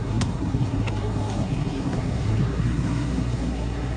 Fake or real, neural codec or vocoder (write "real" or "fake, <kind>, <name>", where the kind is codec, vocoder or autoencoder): fake, codec, SNAC